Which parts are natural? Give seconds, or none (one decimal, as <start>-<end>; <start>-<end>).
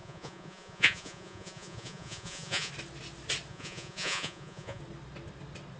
2.7-3.5; 4.8-5.8